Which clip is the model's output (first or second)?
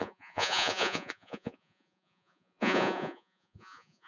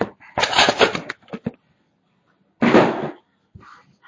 first